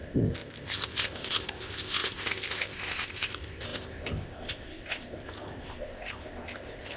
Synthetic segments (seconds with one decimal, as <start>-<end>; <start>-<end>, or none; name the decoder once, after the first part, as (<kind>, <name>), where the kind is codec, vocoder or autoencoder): 0.0-7.0 (codec, ZipCodec)